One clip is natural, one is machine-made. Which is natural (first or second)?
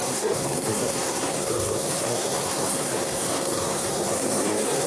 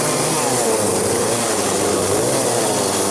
second